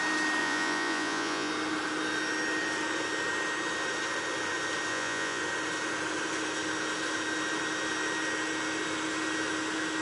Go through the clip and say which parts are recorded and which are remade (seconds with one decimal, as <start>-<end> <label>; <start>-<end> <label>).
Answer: 0.0-0.4 recorded; 0.4-1.5 remade; 1.5-4.9 recorded; 4.9-5.4 remade; 5.4-10.0 recorded